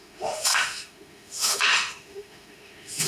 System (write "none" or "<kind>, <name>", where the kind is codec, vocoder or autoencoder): autoencoder, DAC-VAE